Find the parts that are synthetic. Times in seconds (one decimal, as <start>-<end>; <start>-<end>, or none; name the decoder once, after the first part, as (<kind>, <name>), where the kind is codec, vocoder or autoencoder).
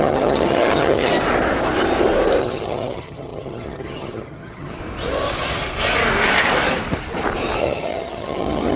0.0-1.1 (vocoder, HiFi-GAN); 2.4-4.8; 7.6-8.8